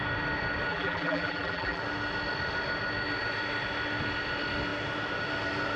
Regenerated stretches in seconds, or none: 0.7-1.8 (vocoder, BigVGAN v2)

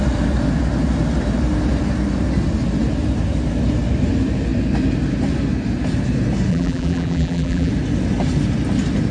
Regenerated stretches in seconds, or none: 6.5-7.7 (vocoder, BigVGAN v2)

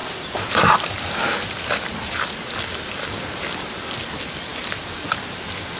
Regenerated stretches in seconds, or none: none

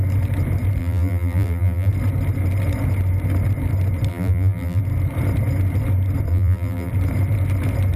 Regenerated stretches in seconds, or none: 0.8-1.9 (vocoder, BigVGAN v2); 4.1-4.8; 6.3-6.9

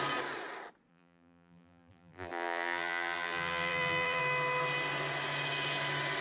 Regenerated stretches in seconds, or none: 0.9-4.2 (vocoder, BigVGAN v2)

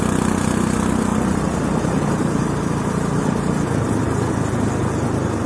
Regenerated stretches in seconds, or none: 1.1-4.3 (vocoder, BigVGAN v2)